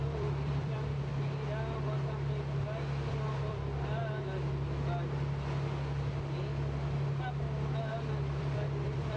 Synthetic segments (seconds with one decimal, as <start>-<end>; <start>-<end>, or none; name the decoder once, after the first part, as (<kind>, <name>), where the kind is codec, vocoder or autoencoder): 0.0-1.1 (vocoder, BigVGAN v2); 3.1-4.0; 8.1-9.2